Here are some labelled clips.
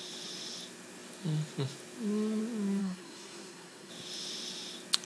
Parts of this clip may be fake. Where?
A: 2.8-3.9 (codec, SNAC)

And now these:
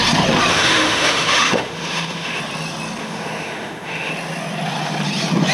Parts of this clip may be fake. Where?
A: 0.5-2.4 (autoencoder, DAC-VAE); 3.0-4.1

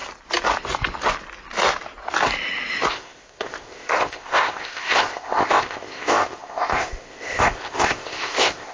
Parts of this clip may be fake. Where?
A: 2.9-8.7 (codec, ZipCodec)